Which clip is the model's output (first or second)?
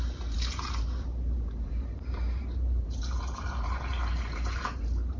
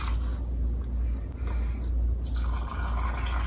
first